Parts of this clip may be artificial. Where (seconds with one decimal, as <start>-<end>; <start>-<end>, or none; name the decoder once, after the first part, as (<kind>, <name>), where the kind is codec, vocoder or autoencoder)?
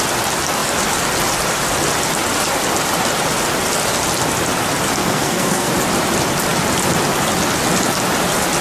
5.0-5.7 (codec, SNAC)